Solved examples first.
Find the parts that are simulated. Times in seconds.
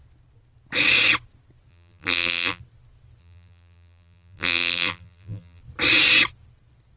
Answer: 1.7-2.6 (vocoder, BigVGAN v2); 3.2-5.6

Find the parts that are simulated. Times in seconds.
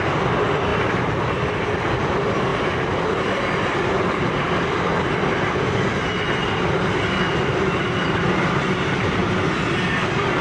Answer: 0.0-0.7 (vocoder, BigVGAN v2); 1.3-9.2; 9.9-10.4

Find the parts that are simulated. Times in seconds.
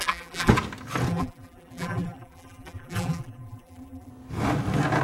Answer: 0.0-0.5 (vocoder, BigVGAN v2); 1.1-4.1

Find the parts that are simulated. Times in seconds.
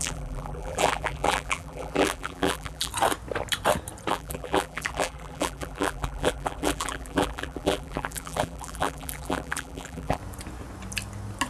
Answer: 0.0-2.9 (vocoder, BigVGAN v2); 4.1-10.2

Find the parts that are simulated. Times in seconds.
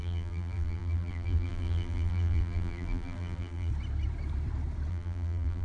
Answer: 0.0-3.7 (vocoder, BigVGAN v2); 4.9-5.6